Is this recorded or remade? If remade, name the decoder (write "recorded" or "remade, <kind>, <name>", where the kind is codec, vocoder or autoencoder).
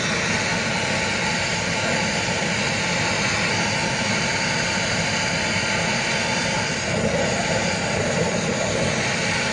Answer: recorded